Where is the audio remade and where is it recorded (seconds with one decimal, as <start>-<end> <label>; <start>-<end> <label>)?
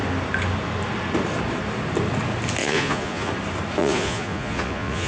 0.0-2.6 recorded; 2.6-3.3 remade; 3.3-3.8 recorded; 3.8-5.1 remade